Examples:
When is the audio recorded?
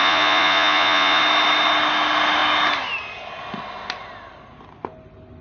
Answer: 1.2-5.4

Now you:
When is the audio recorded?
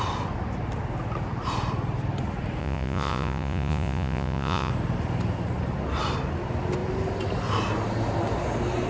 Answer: 0.0-2.6; 4.7-8.9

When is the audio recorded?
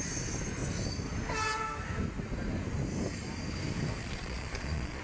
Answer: 0.0-4.0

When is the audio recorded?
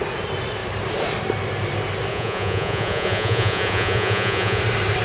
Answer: 0.0-2.1; 4.6-5.0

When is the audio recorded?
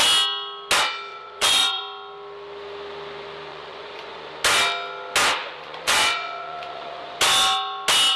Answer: 0.0-1.1; 1.8-3.5; 4.3-5.4; 7.2-8.2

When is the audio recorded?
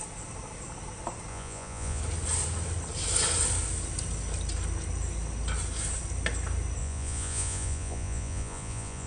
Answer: 0.0-1.3; 2.0-6.8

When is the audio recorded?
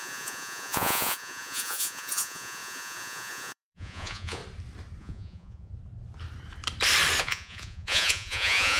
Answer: 4.4-5.0; 5.7-7.2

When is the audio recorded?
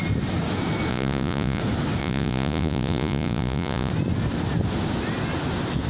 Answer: 0.0-0.9; 1.6-2.0; 3.9-5.9